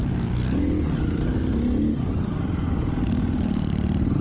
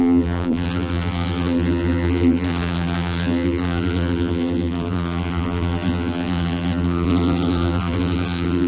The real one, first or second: first